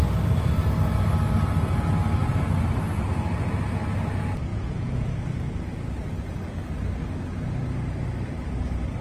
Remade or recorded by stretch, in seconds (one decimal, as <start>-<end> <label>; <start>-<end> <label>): 0.0-4.5 recorded; 4.5-5.1 remade; 5.1-9.0 recorded